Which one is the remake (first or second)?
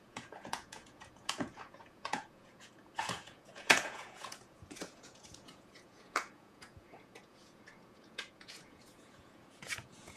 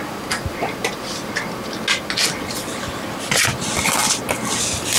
first